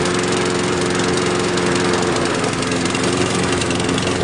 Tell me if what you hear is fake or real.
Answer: real